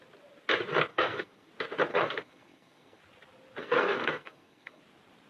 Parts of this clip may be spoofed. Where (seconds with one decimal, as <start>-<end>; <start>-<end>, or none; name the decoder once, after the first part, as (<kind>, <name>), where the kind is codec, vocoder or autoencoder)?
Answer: 0.9-1.5 (codec, SNAC); 1.9-3.0; 3.6-4.8